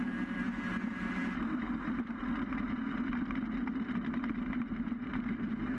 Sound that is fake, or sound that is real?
real